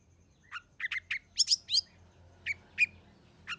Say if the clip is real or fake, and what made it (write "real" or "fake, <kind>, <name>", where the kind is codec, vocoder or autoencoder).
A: real